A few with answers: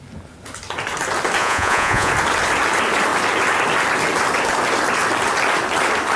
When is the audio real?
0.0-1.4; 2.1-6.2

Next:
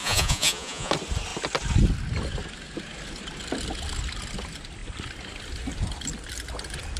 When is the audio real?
0.9-7.0

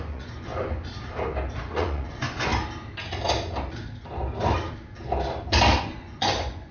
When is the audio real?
0.5-1.6; 2.5-5.8

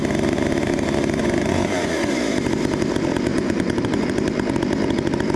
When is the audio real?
0.0-1.2; 2.1-3.3; 4.1-5.4